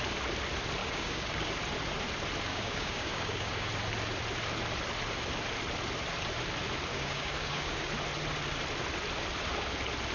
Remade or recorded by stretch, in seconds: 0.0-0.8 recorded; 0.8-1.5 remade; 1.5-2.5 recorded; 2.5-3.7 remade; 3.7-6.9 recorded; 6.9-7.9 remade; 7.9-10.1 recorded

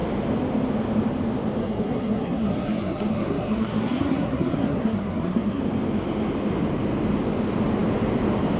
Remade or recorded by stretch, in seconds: 0.0-1.6 recorded; 1.6-5.6 remade; 5.6-8.6 recorded

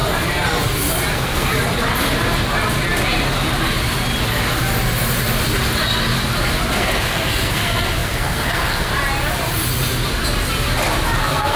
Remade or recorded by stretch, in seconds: 0.0-1.1 recorded; 1.1-1.5 remade; 1.5-6.7 recorded; 6.7-8.9 remade; 8.9-11.2 recorded; 11.2-11.6 remade

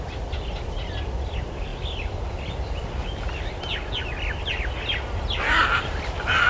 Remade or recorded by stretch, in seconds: 0.0-6.5 recorded

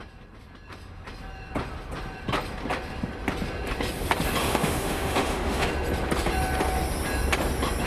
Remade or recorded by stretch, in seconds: 0.0-4.4 recorded; 4.4-5.7 remade; 5.7-7.9 recorded

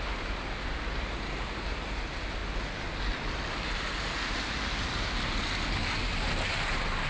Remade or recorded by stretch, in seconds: 0.0-7.1 recorded

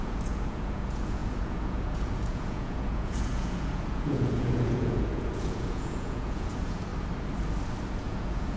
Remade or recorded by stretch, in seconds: 0.0-6.9 remade; 6.9-7.9 recorded; 7.9-8.6 remade